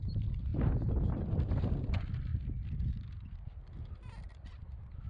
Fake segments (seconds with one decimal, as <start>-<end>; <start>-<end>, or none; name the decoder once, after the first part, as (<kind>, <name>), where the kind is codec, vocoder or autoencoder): 0.0-0.5 (vocoder, BigVGAN v2); 1.4-2.3; 4.2-5.1

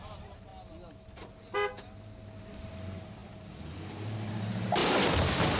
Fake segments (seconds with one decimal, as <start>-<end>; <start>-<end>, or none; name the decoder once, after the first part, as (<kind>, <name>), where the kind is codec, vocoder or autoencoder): 0.0-0.5 (vocoder, BigVGAN v2); 2.4-5.6

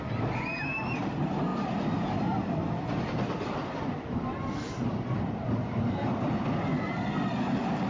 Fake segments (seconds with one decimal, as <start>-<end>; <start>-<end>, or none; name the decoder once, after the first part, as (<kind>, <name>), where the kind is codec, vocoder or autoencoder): 0.0-7.9 (vocoder, BigVGAN v2)

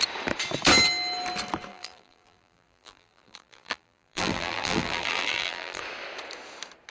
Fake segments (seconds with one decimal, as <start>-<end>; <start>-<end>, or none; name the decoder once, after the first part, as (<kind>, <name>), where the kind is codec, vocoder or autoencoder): 1.7-5.8 (vocoder, BigVGAN v2)